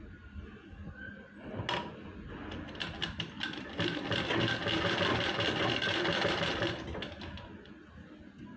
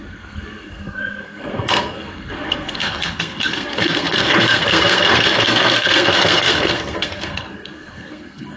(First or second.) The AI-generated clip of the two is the second